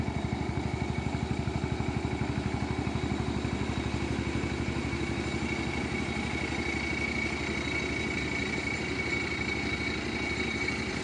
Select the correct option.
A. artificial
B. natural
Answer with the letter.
B